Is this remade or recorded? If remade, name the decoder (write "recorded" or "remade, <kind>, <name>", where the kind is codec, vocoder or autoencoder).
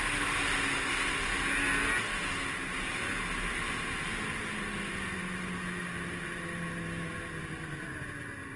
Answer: recorded